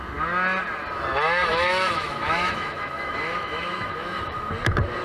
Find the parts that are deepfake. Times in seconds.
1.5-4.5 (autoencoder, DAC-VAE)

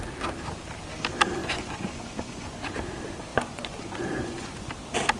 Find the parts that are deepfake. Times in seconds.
1.4-2.6 (vocoder, Vocos); 3.3-4.7

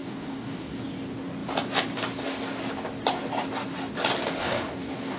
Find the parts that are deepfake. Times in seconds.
0.0-0.8 (codec, DAC); 4.4-5.2

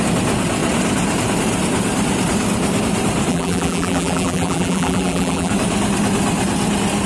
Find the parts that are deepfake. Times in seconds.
3.3-5.5 (vocoder, BigVGAN v2)

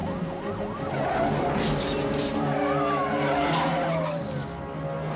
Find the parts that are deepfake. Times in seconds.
none

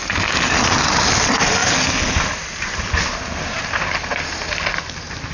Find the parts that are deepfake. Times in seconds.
none

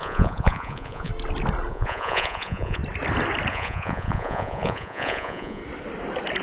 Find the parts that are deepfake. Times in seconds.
0.0-1.1 (vocoder, Vocos); 1.7-2.8; 3.5-5.6